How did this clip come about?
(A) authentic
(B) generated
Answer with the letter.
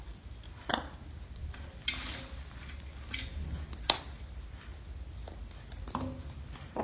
A